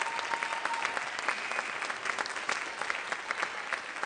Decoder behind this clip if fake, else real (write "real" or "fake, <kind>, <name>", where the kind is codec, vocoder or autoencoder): real